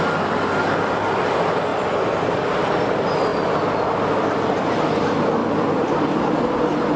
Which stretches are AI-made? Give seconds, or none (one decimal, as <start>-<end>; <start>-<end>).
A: 1.7-2.3; 5.4-6.3